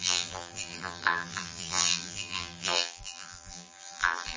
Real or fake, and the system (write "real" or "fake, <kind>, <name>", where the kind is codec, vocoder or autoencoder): fake, vocoder, BigVGAN v2